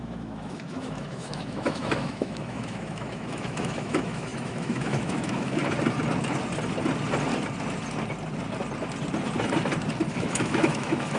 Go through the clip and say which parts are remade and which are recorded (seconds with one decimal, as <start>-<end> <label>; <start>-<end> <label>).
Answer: 0.0-5.6 remade; 5.6-10.1 recorded; 10.1-11.2 remade